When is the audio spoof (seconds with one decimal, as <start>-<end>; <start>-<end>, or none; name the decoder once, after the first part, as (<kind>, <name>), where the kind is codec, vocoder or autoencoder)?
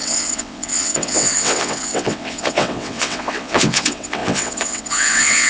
0.0-5.5 (vocoder, WaveNeXt)